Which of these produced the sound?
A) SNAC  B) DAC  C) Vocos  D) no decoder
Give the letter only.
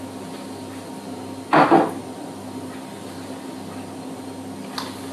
D